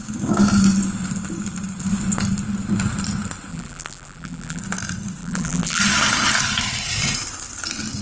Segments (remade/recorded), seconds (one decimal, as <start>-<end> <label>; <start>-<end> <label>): 0.0-3.5 recorded; 3.5-4.6 remade; 4.6-5.2 recorded; 5.2-5.8 remade; 5.8-8.0 recorded